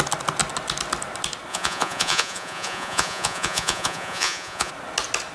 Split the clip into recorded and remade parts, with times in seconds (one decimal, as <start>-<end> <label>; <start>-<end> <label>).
0.0-1.5 recorded; 1.5-4.7 remade; 4.7-5.3 recorded